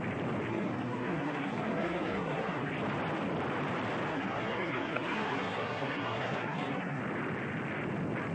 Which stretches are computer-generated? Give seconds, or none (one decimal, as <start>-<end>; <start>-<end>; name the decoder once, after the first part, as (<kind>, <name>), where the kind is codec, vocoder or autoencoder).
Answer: 0.5-2.7 (codec, SNAC); 4.1-7.0